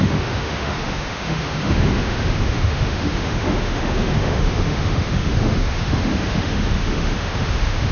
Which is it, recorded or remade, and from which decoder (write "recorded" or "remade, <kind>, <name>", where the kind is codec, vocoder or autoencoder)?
remade, autoencoder, DAC-VAE